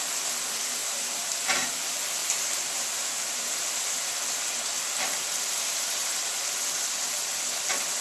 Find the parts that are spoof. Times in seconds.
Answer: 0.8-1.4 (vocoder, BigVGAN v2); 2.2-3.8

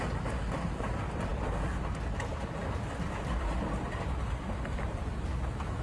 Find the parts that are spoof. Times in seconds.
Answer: none

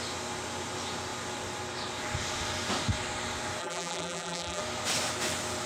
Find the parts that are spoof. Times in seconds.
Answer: 3.6-4.6 (vocoder, BigVGAN v2)